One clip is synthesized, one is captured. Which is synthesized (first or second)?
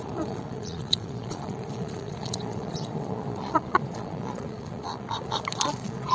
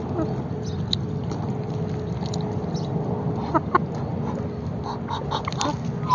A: first